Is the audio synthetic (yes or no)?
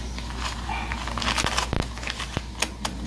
no